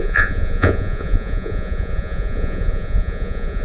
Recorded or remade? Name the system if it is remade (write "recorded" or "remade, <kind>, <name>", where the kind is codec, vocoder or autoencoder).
remade, vocoder, Vocos